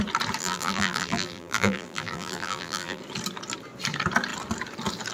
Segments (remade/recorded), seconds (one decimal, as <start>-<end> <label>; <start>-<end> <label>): 0.0-0.4 recorded; 0.4-3.0 remade; 3.0-5.1 recorded